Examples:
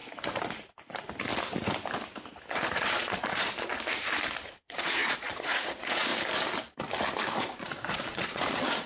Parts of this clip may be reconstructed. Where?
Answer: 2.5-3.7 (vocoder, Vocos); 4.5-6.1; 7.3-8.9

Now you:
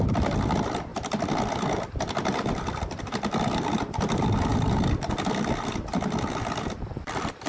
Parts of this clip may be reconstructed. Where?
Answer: none

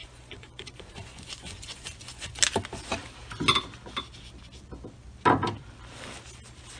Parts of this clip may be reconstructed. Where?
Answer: 0.0-2.4 (vocoder, Vocos)

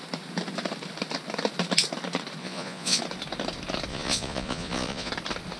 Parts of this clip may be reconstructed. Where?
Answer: 2.4-3.0 (vocoder, Vocos); 3.9-5.1

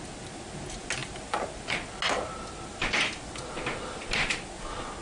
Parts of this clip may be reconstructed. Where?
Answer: none

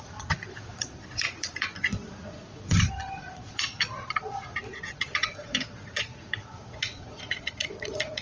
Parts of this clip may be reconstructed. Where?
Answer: 0.0-8.2 (vocoder, Vocos)

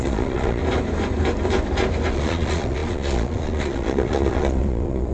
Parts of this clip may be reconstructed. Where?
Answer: 0.0-0.6 (vocoder, Vocos); 2.1-5.1

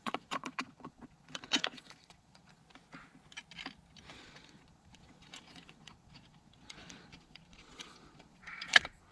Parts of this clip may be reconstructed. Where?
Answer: 0.0-2.6 (vocoder, Vocos); 4.1-9.1